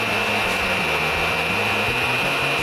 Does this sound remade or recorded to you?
recorded